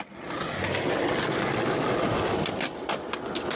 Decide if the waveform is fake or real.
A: real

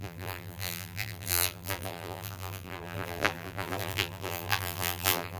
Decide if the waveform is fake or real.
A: fake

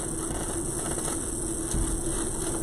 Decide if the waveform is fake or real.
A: real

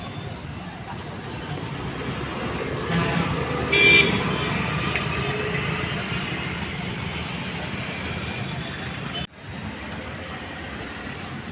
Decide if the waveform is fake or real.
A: real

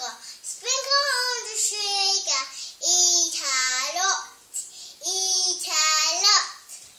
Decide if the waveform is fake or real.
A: real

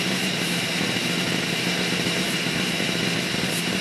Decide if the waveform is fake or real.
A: fake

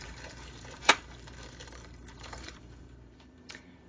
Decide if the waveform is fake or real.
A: fake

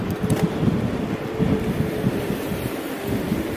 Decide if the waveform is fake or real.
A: real